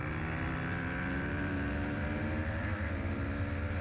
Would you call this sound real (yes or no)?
yes